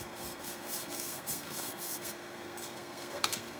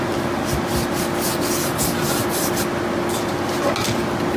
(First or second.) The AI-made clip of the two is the first